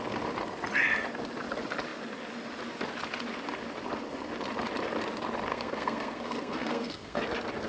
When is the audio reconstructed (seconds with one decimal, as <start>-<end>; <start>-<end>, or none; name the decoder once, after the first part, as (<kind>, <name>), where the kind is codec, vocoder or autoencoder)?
5.5-7.2 (codec, SNAC)